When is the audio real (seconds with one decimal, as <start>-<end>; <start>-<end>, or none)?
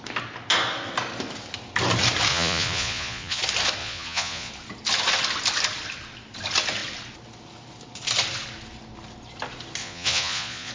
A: 0.0-2.3; 3.4-3.8; 4.5-9.8